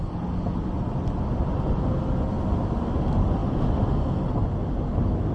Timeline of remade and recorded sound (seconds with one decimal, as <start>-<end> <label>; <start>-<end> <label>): 0.0-5.3 recorded